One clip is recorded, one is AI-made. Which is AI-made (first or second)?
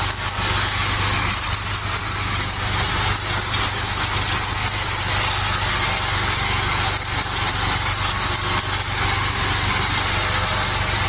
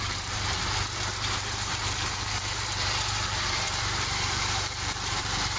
second